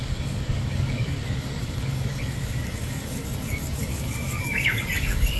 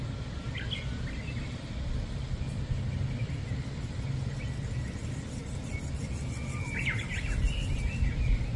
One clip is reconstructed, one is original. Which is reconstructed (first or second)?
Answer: first